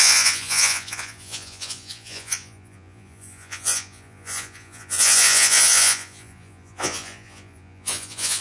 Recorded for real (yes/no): no